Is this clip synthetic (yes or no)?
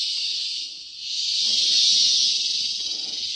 no